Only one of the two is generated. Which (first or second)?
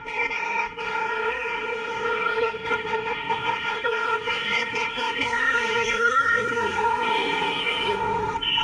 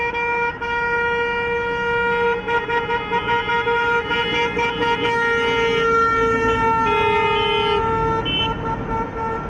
first